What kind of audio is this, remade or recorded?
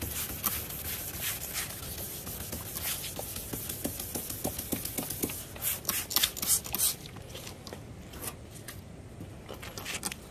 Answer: recorded